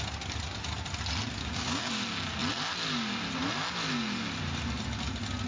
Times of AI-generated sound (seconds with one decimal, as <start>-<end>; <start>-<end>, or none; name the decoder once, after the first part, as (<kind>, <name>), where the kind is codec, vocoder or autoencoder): 1.4-1.9 (codec, DAC)